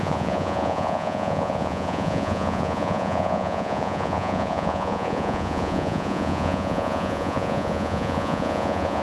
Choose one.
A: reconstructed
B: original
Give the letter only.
A